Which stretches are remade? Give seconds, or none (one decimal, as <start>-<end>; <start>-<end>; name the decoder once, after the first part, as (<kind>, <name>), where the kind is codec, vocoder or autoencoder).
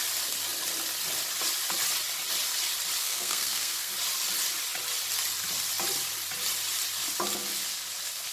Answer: 3.0-3.9 (codec, SNAC)